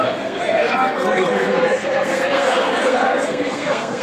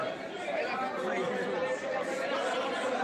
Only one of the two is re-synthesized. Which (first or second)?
first